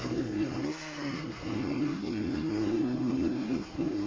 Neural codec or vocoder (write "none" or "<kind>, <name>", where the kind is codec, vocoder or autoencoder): codec, SNAC